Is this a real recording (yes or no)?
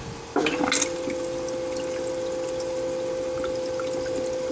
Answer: yes